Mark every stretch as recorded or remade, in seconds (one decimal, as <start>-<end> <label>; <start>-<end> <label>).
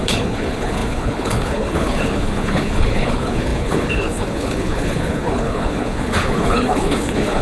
0.0-7.4 remade